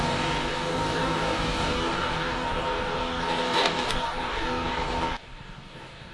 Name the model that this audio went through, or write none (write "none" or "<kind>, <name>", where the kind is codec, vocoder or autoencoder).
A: codec, DAC